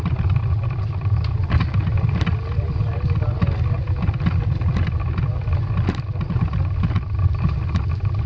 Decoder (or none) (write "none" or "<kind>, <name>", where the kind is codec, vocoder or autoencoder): none